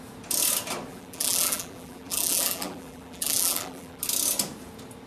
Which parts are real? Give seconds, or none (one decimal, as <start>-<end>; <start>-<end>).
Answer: 0.0-0.9; 4.0-5.1